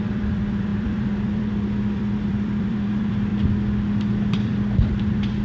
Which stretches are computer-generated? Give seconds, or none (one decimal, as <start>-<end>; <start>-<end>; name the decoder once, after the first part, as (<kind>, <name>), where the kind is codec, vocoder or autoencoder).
0.0-3.3 (vocoder, BigVGAN v2); 4.0-5.4